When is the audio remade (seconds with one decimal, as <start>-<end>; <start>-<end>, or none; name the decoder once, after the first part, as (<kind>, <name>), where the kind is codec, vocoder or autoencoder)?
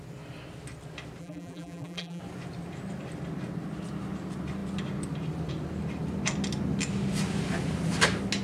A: 1.2-2.2 (vocoder, BigVGAN v2)